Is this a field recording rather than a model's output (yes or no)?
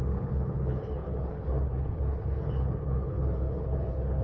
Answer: no